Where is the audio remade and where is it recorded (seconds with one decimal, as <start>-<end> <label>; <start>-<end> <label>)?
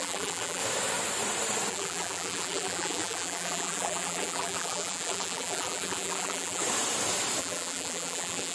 0.0-0.6 remade; 0.6-1.7 recorded; 1.7-6.6 remade; 6.6-7.4 recorded; 7.4-8.5 remade